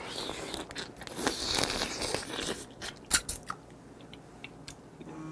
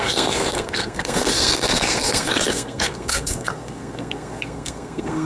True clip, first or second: first